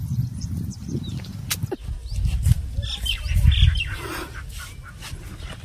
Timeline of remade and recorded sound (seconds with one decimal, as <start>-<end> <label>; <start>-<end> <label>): 0.0-5.6 recorded